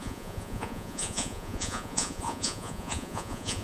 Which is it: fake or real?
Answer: fake